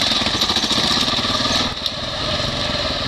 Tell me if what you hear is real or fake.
real